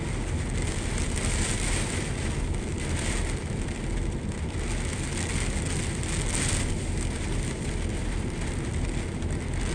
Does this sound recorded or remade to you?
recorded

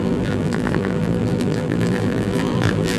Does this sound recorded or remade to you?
remade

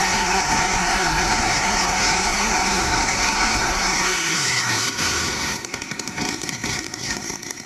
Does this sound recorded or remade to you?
remade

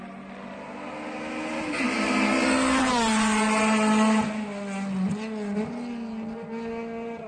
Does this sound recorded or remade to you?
recorded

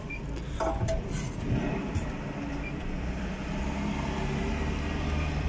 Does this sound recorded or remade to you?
remade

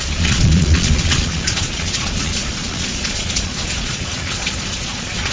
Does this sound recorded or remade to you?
remade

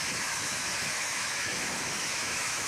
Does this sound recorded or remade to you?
remade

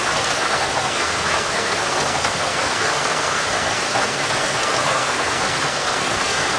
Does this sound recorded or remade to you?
remade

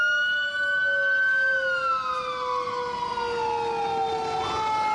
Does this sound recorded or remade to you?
recorded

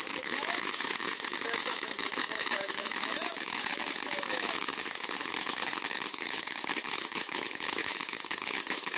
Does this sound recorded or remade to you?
remade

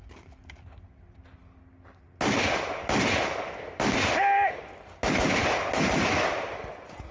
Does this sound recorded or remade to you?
recorded